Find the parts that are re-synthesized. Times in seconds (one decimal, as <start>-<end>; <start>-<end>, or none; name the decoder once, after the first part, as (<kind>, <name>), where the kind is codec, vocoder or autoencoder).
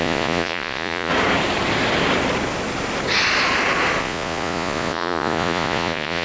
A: 0.0-1.1 (vocoder, Vocos); 4.0-6.2